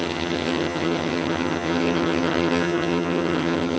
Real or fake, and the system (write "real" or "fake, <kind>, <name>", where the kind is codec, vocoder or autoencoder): fake, vocoder, HiFi-GAN